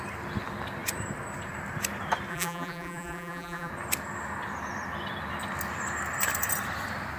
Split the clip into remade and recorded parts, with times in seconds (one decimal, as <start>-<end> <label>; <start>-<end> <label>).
0.0-2.3 recorded; 2.3-3.7 remade; 3.7-7.2 recorded